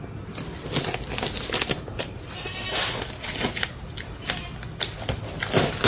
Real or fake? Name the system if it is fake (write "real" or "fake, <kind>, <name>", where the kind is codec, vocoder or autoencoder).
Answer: real